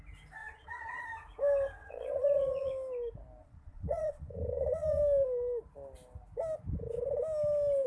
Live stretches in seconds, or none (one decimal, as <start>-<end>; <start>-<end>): 0.0-0.4; 1.0-1.8; 2.7-3.4; 5.0-7.9